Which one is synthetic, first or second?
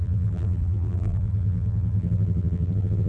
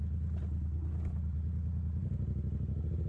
first